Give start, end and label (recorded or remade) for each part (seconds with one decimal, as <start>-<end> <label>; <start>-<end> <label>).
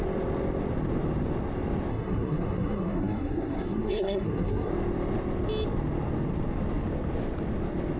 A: 0.0-1.9 recorded; 1.9-4.7 remade; 4.7-8.0 recorded